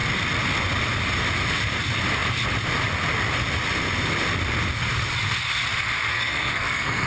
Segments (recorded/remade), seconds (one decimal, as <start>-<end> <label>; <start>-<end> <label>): 0.0-6.1 recorded; 6.1-7.1 remade